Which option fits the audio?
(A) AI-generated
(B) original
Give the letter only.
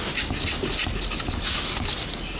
B